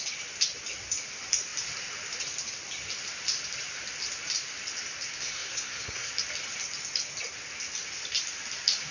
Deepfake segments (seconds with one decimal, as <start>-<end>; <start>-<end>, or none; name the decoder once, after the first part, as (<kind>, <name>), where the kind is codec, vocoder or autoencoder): 5.2-6.1 (codec, SNAC)